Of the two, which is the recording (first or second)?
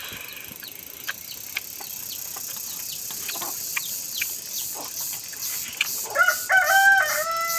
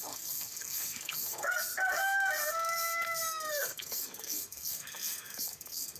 first